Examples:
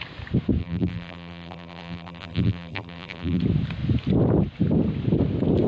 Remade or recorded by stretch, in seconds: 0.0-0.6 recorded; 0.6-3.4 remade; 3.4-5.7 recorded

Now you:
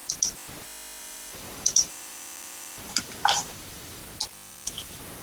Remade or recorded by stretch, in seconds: 0.0-1.0 recorded; 1.0-4.0 remade; 4.0-4.5 recorded; 4.5-5.2 remade